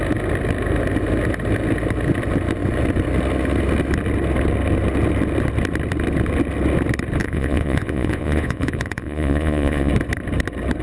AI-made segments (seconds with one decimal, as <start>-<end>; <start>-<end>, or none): 7.2-9.9